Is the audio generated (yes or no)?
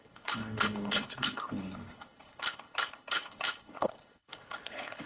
yes